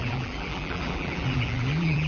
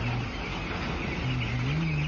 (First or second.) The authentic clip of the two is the second